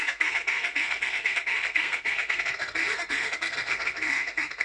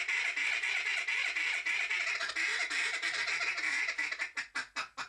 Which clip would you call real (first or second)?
second